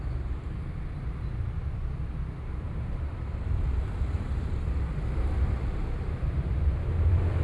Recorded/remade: remade